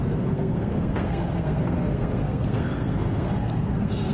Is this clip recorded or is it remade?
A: remade